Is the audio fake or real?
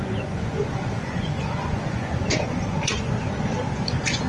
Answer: fake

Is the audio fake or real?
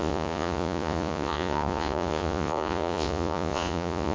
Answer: fake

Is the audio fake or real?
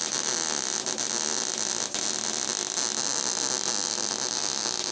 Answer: real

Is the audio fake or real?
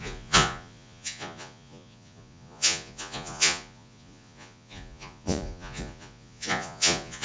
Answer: fake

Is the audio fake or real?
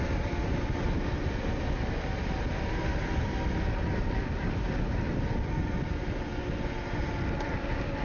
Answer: real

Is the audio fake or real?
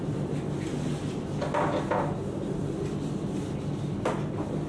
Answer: real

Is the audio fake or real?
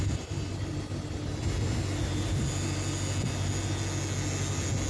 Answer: real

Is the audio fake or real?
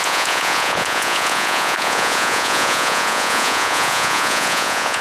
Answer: fake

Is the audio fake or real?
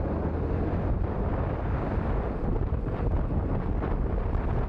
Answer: real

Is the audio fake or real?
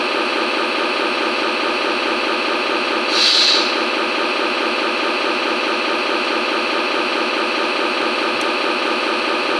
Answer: real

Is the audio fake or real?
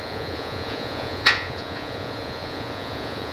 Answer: fake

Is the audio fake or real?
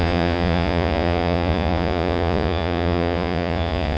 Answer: fake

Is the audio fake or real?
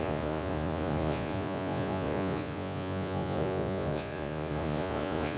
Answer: fake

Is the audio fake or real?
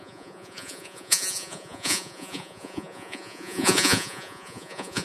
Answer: fake